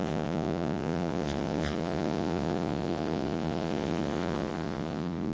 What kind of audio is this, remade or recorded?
remade